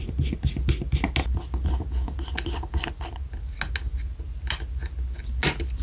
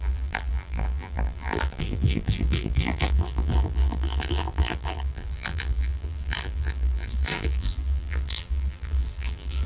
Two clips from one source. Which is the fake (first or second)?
second